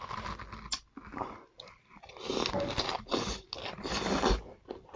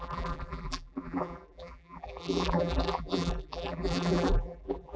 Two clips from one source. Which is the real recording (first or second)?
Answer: first